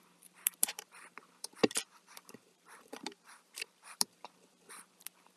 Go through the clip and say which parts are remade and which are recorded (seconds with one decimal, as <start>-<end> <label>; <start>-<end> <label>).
0.0-1.6 remade; 1.6-2.2 recorded; 2.2-5.4 remade